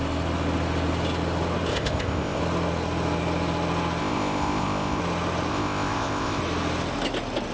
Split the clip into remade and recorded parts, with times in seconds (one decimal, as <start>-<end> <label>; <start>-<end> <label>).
0.0-1.7 recorded; 1.7-2.4 remade; 2.4-4.0 recorded; 4.0-5.0 remade; 5.0-5.5 recorded; 5.5-6.4 remade; 6.4-7.5 recorded